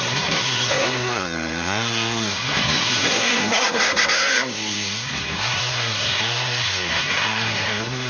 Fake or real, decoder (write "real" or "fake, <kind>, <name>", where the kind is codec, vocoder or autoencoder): fake, codec, SNAC